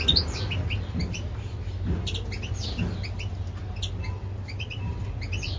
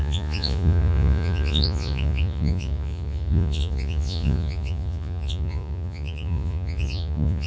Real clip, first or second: first